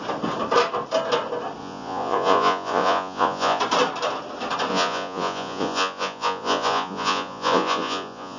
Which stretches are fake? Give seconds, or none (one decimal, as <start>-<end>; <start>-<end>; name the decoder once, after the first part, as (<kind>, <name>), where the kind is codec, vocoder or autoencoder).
1.6-3.6 (vocoder, Vocos); 4.7-8.4

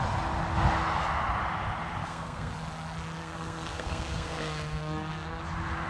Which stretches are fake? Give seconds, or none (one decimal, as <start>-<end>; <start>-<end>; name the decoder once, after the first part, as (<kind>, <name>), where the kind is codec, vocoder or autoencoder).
2.0-2.5 (codec, SNAC); 3.2-5.4

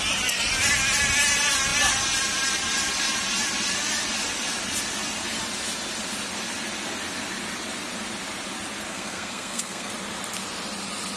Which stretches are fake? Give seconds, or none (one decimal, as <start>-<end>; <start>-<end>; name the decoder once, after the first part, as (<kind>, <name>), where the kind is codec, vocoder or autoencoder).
8.9-9.9 (codec, SNAC)

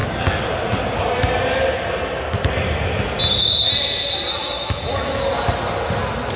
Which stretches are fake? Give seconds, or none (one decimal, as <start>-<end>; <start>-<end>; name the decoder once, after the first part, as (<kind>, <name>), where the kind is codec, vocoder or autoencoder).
4.4-5.2 (autoencoder, DAC-VAE)